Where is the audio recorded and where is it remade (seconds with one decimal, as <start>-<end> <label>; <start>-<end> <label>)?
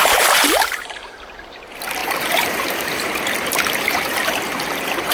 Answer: 0.0-5.1 remade